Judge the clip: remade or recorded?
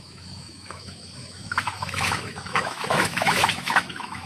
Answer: remade